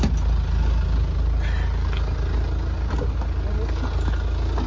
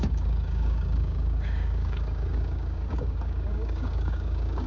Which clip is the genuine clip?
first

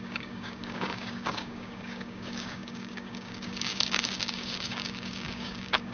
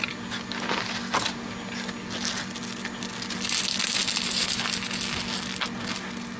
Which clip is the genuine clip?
second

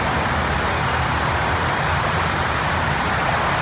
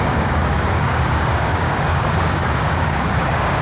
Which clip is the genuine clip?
first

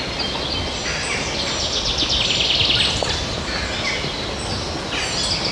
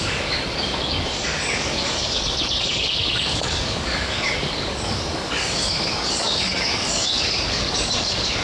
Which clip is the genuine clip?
first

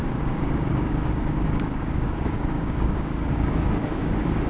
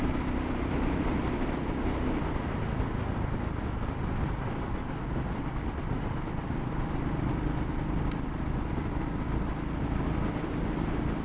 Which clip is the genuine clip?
second